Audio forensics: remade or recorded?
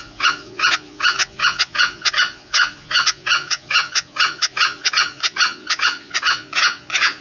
remade